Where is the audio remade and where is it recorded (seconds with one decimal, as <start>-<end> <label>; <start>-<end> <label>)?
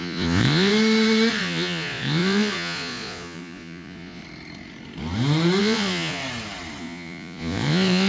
0.0-0.7 remade; 0.7-1.3 recorded; 1.3-4.2 remade; 4.2-5.6 recorded; 5.6-6.2 remade; 6.2-6.8 recorded; 6.8-8.1 remade